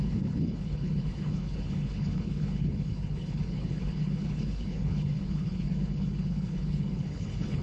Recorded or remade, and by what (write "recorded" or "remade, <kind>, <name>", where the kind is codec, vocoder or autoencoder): remade, codec, HILCodec